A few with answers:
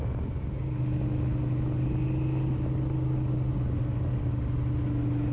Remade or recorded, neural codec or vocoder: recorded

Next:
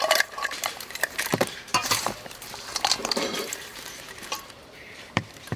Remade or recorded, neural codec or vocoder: remade, vocoder, BigVGAN v2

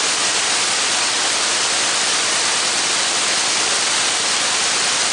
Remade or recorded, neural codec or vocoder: recorded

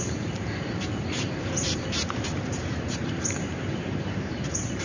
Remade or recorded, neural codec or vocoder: remade, vocoder, BigVGAN v2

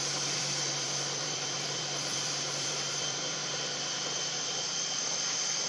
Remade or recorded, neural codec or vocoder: remade, vocoder, BigVGAN v2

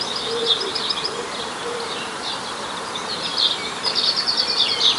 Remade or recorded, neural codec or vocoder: remade, vocoder, BigVGAN v2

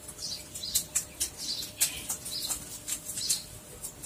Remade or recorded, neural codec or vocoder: recorded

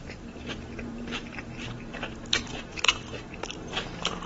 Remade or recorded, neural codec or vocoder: remade, vocoder, BigVGAN v2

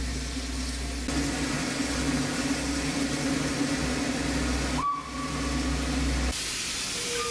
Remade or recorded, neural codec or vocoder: recorded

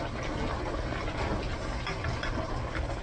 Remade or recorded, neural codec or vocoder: recorded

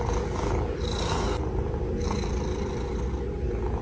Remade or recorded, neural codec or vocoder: recorded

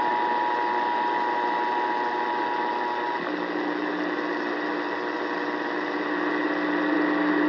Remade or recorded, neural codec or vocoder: recorded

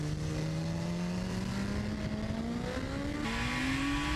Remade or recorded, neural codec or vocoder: recorded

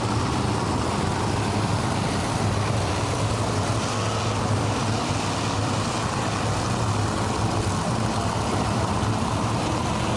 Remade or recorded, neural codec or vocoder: recorded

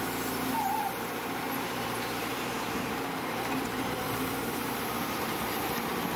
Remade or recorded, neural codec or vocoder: remade, vocoder, BigVGAN v2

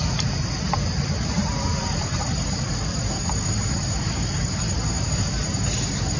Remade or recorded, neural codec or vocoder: remade, vocoder, BigVGAN v2